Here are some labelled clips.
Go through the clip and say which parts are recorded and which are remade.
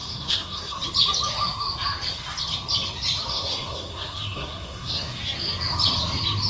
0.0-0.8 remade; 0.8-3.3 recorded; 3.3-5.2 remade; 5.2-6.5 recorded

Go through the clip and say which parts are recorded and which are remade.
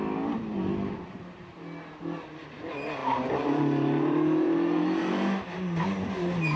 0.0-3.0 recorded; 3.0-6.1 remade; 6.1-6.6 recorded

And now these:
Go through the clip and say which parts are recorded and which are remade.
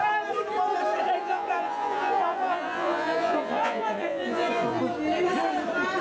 0.0-1.2 recorded; 1.2-4.8 remade; 4.8-6.0 recorded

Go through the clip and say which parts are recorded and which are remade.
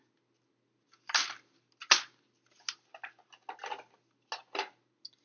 0.0-5.2 recorded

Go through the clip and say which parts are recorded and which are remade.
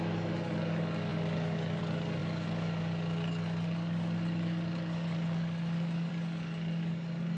0.0-7.4 remade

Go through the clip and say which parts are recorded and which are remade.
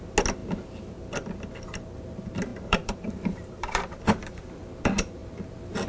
0.0-2.5 recorded; 2.5-4.4 remade; 4.4-5.9 recorded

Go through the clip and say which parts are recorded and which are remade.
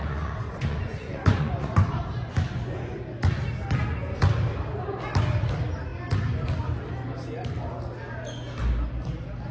0.0-1.9 remade; 1.9-9.5 recorded